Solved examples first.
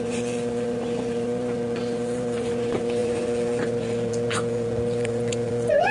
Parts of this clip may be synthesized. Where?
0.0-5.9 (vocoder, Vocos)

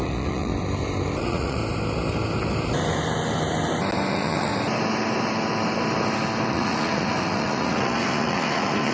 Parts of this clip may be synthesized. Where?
0.0-0.5 (vocoder, Vocos); 1.2-1.6; 4.1-4.5; 6.5-8.9

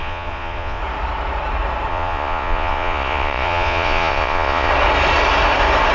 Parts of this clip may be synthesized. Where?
0.0-0.8 (vocoder, Vocos); 1.9-4.7

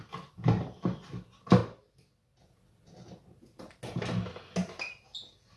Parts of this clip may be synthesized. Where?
none

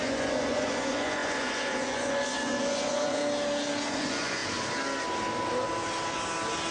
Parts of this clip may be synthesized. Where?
0.0-3.2 (vocoder, Vocos); 3.9-4.4

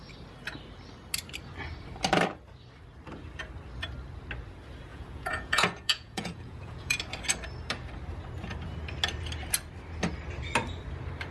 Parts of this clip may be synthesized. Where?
4.9-7.0 (vocoder, Vocos)

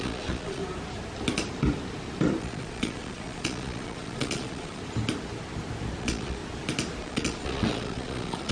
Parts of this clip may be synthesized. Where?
0.0-0.6 (vocoder, Vocos); 2.4-4.8; 6.0-6.4; 7.0-8.5